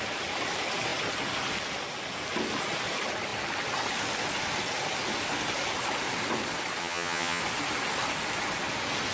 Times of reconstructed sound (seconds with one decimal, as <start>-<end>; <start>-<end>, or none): 6.8-7.4